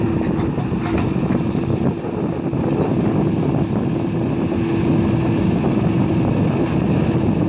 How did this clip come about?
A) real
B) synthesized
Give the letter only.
A